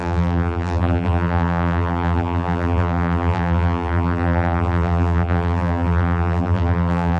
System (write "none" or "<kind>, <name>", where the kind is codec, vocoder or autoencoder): vocoder, BigVGAN v2